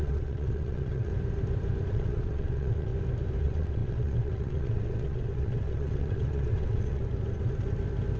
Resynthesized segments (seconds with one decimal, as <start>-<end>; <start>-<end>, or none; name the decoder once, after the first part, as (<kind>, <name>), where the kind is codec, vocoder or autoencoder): 0.0-1.1 (vocoder, WaveNeXt); 1.9-2.9; 3.4-7.0